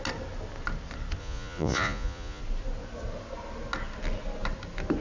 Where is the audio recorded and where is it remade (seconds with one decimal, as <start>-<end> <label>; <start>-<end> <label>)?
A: 0.0-1.2 recorded; 1.2-2.4 remade; 2.4-5.0 recorded